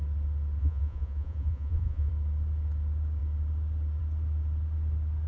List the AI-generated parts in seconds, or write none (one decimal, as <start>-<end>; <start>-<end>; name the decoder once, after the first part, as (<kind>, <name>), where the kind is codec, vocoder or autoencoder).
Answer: 0.6-2.1 (vocoder, Vocos)